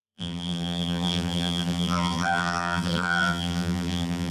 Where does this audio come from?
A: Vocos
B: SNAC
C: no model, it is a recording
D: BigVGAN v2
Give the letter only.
D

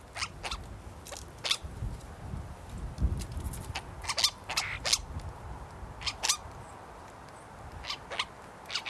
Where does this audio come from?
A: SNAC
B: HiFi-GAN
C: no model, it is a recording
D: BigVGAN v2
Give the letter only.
C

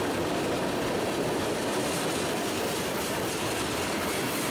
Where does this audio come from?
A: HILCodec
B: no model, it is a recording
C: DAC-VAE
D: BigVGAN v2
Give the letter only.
B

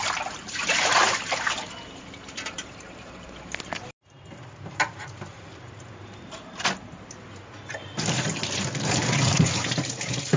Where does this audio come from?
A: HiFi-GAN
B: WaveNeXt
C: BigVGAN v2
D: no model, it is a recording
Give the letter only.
C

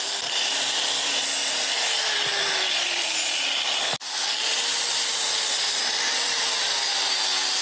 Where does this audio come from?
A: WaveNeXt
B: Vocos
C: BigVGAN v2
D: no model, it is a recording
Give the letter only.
C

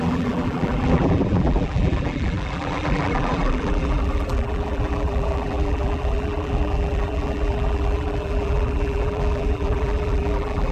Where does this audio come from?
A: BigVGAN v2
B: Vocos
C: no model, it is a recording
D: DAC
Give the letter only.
A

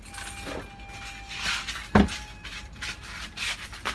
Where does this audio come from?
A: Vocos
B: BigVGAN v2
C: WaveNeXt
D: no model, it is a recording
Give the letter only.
D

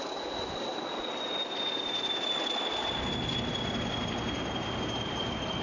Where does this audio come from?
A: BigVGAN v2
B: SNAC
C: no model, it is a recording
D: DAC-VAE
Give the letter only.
C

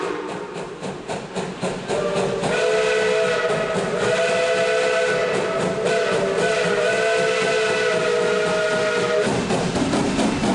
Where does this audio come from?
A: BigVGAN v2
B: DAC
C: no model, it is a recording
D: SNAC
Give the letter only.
C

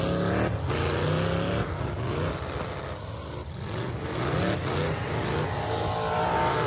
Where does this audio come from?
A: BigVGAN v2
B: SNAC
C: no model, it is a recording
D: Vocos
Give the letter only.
C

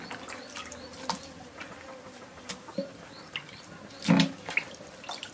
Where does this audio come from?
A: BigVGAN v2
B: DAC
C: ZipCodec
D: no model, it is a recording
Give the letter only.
D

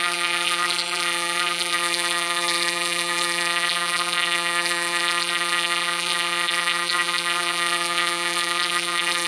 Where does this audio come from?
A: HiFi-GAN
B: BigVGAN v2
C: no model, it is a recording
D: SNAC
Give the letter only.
B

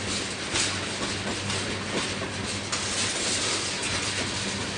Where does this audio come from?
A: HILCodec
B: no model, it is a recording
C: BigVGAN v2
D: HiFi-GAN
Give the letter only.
B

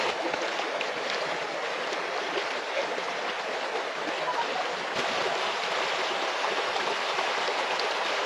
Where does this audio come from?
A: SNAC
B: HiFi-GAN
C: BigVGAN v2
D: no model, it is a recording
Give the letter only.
D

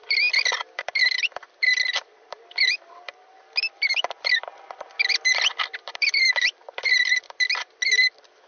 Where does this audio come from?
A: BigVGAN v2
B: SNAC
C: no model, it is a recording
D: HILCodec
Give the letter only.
A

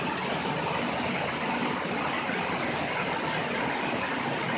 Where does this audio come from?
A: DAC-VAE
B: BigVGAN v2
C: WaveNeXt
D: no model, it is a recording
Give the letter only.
D